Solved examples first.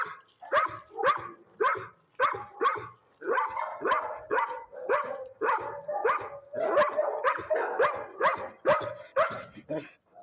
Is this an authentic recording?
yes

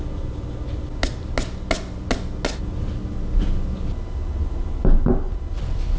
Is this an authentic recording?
yes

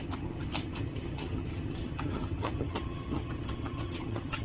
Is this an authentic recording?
no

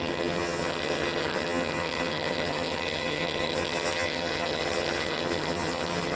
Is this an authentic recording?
no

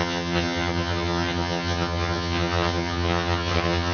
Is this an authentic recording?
no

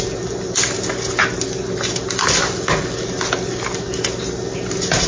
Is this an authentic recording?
yes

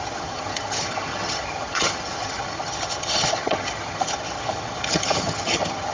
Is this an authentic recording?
no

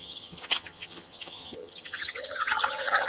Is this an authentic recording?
no